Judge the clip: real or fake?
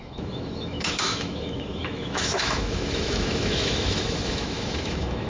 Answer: fake